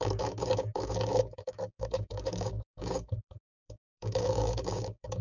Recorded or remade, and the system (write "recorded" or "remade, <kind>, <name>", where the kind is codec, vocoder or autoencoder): remade, codec, DAC